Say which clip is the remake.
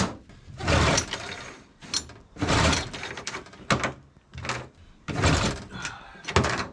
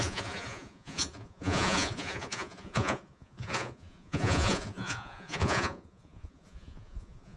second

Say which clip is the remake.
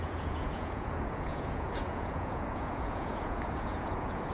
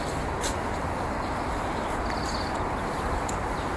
first